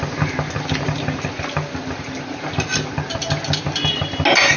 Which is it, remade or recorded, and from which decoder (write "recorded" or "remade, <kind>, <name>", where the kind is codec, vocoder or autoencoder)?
recorded